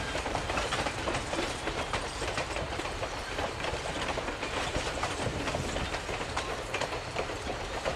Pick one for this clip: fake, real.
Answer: fake